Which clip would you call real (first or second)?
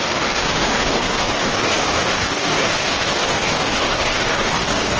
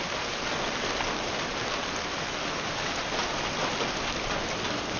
second